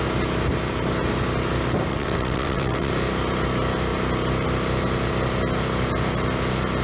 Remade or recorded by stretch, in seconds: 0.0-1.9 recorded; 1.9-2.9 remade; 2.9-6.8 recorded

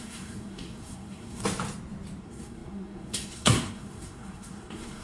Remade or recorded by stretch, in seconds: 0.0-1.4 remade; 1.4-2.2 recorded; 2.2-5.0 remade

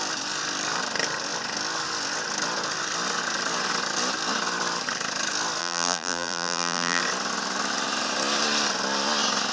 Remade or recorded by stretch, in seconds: 0.0-5.6 recorded; 5.6-7.0 remade; 7.0-9.5 recorded